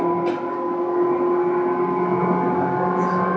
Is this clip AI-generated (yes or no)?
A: no